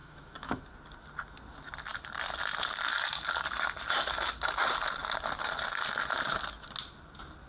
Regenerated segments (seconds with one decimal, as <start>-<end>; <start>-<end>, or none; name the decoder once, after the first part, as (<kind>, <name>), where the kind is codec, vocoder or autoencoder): 0.0-0.6 (autoencoder, DAC-VAE)